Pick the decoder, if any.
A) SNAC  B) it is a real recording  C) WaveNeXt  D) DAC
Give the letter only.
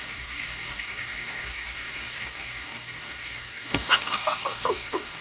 D